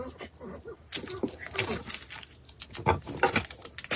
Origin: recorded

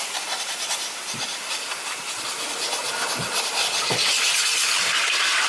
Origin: recorded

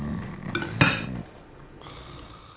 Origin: recorded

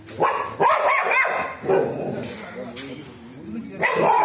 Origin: recorded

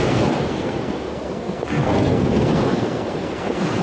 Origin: remade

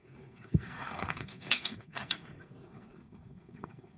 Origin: remade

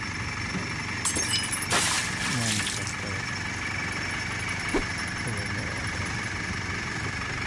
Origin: recorded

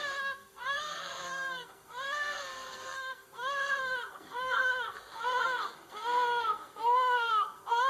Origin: remade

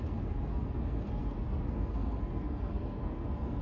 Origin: remade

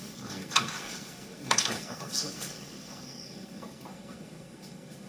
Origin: remade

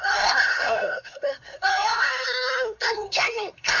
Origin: remade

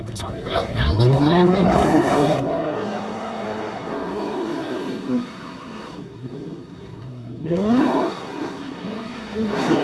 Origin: remade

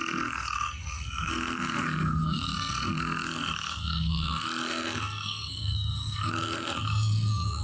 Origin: remade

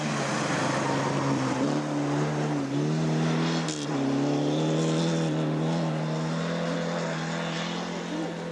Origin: recorded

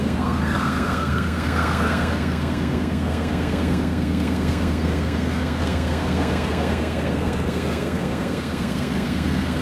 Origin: remade